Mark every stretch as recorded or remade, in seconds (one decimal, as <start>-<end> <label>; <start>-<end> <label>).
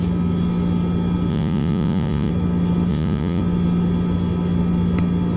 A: 0.0-1.3 recorded; 1.3-2.3 remade; 2.3-2.9 recorded; 2.9-3.4 remade; 3.4-5.4 recorded